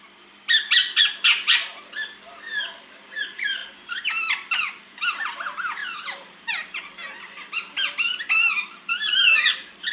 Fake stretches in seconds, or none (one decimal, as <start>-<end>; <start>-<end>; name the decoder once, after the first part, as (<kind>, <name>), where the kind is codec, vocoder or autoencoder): 0.0-5.8 (vocoder, BigVGAN v2); 8.9-9.9